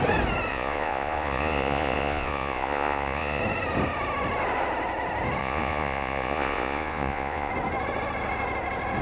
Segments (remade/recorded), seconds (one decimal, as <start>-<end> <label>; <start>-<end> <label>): 0.0-0.5 recorded; 0.5-3.4 remade; 3.4-5.4 recorded; 5.4-7.5 remade; 7.5-9.0 recorded